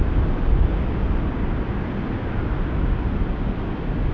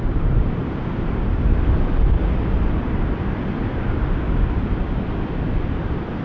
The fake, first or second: second